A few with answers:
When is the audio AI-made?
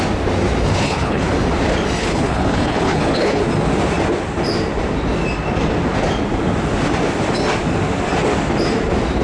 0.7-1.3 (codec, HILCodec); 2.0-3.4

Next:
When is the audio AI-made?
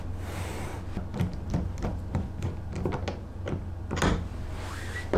none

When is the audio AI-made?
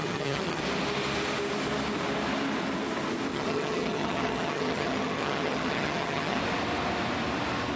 0.0-0.6 (vocoder, HiFi-GAN); 3.3-6.4